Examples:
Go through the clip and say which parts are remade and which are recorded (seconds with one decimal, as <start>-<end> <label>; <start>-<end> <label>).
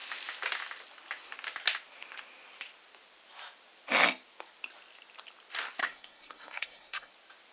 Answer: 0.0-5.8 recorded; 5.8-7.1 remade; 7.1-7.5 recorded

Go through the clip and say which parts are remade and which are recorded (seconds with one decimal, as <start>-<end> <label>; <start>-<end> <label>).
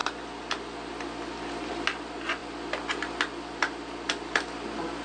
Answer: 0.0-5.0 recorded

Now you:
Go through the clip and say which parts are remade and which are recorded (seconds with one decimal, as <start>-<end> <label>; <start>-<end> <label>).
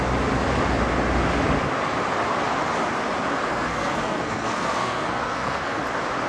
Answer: 0.0-3.5 recorded; 3.5-5.8 remade; 5.8-6.3 recorded